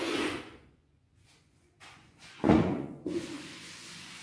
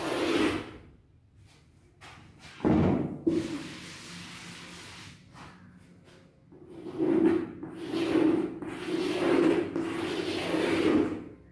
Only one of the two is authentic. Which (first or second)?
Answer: second